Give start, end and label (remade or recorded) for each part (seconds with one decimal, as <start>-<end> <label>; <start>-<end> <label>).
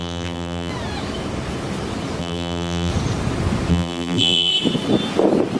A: 0.0-0.7 remade; 0.7-2.2 recorded; 2.2-2.9 remade; 2.9-3.7 recorded; 3.7-4.5 remade; 4.5-5.6 recorded